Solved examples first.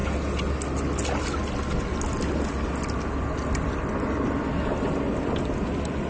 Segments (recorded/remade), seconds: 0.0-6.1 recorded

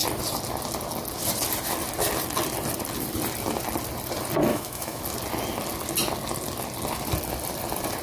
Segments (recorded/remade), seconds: 0.0-4.5 recorded; 4.5-5.0 remade; 5.0-8.0 recorded

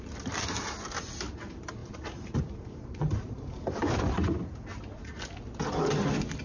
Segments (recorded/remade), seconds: 0.0-1.8 recorded; 1.8-4.1 remade; 4.1-6.4 recorded

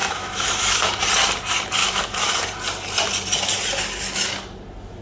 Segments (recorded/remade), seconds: 0.0-1.0 remade; 1.0-1.8 recorded; 1.8-2.4 remade; 2.4-5.0 recorded

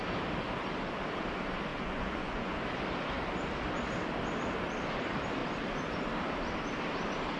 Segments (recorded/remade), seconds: 0.0-1.7 recorded; 1.7-2.6 remade; 2.6-7.4 recorded

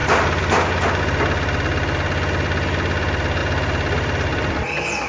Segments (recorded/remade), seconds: 0.0-5.1 recorded